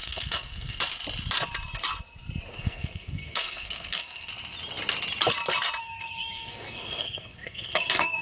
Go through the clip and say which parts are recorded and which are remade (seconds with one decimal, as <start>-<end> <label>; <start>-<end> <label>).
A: 0.0-0.8 remade; 0.8-2.5 recorded; 2.5-4.3 remade; 4.3-5.8 recorded; 5.8-8.2 remade